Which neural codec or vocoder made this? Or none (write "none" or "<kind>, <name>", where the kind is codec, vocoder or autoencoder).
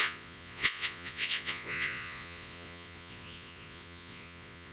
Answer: vocoder, Vocos